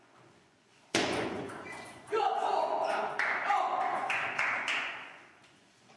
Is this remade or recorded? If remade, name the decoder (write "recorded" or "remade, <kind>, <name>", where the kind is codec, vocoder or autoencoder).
remade, vocoder, Vocos